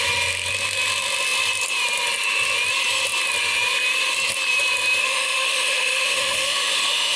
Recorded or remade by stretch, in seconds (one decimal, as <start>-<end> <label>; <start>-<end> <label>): 0.0-5.0 recorded; 5.0-7.2 remade